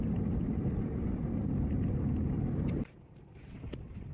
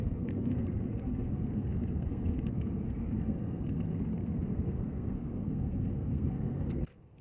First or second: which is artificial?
second